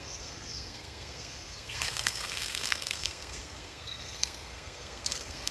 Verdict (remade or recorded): remade